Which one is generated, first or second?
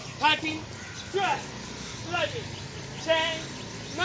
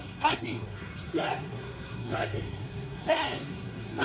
second